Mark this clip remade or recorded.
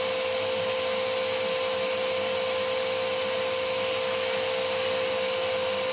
recorded